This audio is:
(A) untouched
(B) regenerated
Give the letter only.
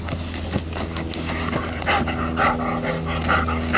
A